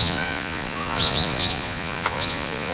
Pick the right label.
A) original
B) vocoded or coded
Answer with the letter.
B